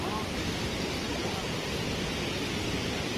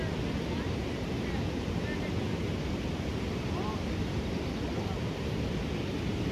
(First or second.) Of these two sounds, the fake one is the first